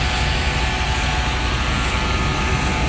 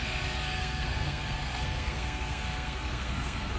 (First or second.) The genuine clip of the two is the first